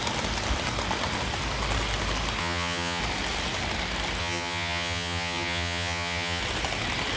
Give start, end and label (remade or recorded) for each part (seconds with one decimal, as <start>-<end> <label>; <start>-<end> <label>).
0.0-2.4 recorded; 2.4-3.0 remade; 3.0-4.2 recorded; 4.2-6.4 remade; 6.4-7.2 recorded